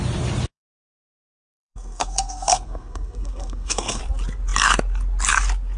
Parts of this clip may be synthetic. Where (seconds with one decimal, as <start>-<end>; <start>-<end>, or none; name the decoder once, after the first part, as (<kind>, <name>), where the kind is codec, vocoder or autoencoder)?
0.5-4.0 (codec, SNAC)